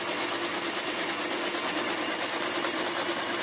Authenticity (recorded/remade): recorded